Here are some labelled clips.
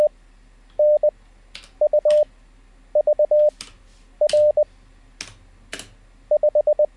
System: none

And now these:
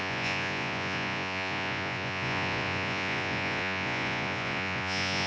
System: vocoder, Vocos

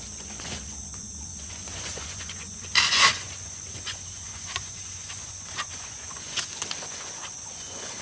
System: vocoder, Vocos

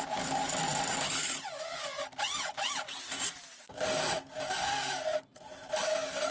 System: none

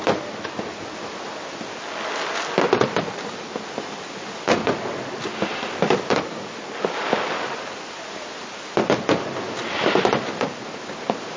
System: none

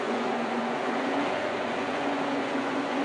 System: vocoder, Vocos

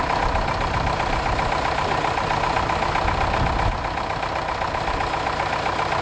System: none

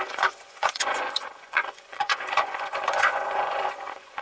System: vocoder, Vocos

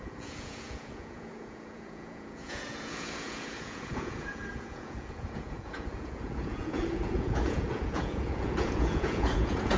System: vocoder, Vocos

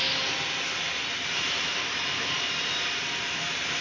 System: none